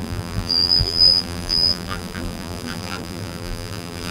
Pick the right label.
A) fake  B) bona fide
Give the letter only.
A